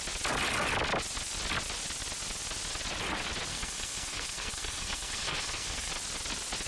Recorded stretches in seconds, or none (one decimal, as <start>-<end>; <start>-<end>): 0.0-3.5; 5.9-6.7